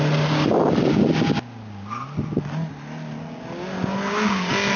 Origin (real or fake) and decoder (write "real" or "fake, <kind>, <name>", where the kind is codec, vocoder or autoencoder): real